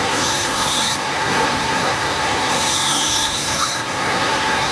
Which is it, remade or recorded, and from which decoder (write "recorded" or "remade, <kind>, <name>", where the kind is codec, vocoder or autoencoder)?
remade, codec, SNAC